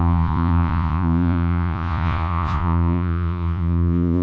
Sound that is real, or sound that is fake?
fake